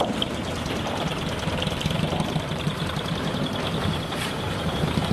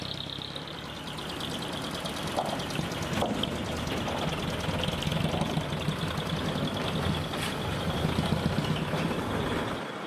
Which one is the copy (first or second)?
first